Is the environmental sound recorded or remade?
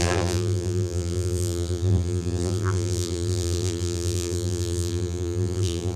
remade